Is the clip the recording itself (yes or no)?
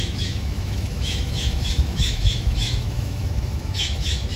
no